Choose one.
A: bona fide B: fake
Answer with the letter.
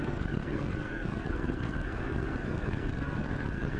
B